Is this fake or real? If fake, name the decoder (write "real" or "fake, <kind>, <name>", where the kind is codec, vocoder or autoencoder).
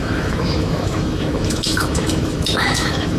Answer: fake, autoencoder, DAC-VAE